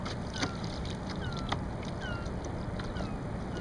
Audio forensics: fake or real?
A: real